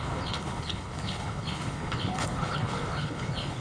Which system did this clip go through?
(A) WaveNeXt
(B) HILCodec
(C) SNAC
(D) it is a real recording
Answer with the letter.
B